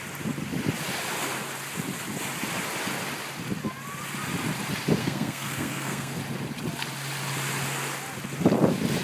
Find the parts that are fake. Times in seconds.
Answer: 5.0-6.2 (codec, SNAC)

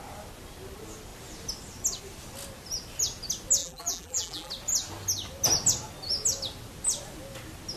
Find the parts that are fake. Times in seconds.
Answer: 3.6-4.5 (vocoder, BigVGAN v2)

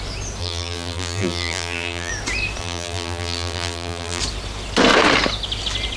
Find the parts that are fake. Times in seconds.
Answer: 0.4-2.1 (vocoder, BigVGAN v2); 2.6-4.2

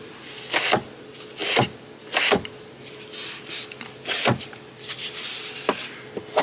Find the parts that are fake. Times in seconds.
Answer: none

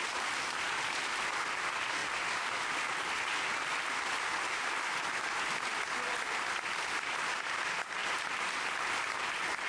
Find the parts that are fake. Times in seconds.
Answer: none

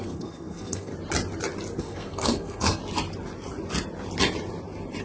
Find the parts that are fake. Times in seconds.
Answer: 0.0-0.9 (codec, SNAC); 1.8-2.8

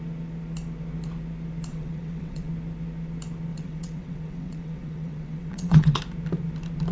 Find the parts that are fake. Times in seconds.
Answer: 1.7-2.5 (vocoder, WaveNeXt); 3.5-6.0

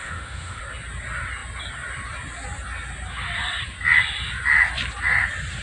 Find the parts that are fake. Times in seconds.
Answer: 0.0-0.6 (autoencoder, DAC-VAE)